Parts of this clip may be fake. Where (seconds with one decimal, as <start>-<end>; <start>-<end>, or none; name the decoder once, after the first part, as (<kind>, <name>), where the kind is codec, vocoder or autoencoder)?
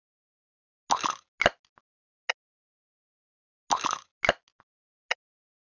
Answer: none